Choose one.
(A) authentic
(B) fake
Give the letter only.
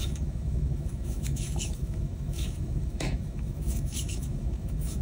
B